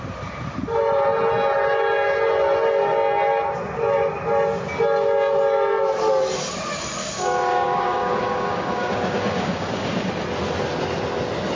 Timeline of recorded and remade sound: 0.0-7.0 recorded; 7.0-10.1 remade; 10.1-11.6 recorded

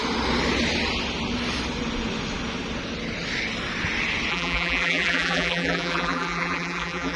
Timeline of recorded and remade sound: 0.0-4.3 recorded; 4.3-7.2 remade

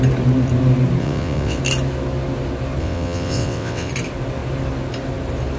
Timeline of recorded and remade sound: 0.0-1.0 recorded; 1.0-1.6 remade; 1.6-2.8 recorded; 2.8-3.9 remade; 3.9-5.6 recorded

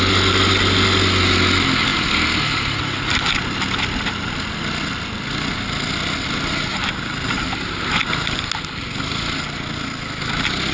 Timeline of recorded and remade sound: 0.0-6.8 recorded; 6.8-7.5 remade; 7.5-10.7 recorded